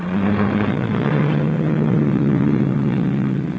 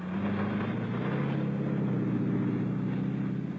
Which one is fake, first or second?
first